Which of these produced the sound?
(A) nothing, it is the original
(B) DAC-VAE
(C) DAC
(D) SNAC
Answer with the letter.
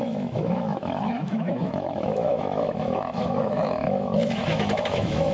B